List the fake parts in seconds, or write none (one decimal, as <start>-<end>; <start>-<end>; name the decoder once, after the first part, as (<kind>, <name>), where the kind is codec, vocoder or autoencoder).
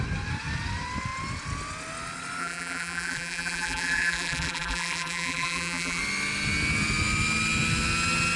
2.4-6.0 (vocoder, BigVGAN v2)